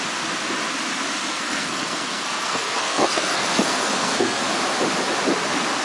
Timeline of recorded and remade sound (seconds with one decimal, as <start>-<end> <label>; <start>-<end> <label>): 0.0-1.3 recorded; 1.3-4.4 remade; 4.4-5.8 recorded